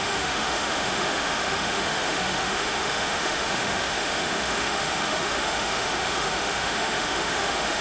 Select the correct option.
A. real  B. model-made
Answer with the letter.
B